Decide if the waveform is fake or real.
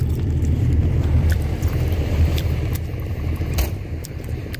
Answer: fake